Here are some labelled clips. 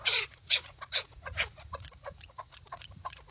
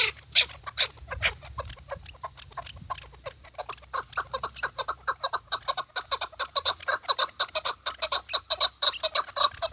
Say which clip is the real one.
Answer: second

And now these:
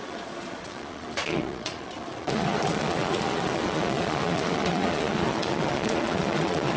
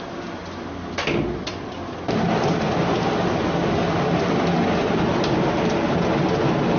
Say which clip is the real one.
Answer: second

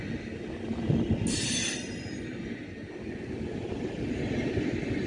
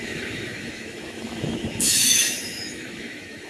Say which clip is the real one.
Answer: first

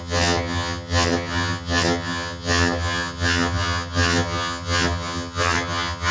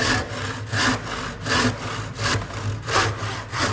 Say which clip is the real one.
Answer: second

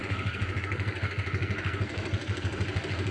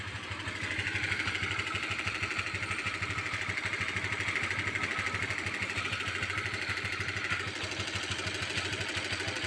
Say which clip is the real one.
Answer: second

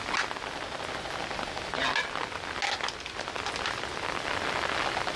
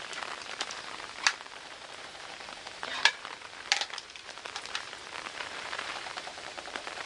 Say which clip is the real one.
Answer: first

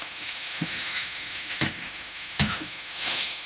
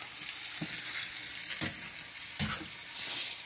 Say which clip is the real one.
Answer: second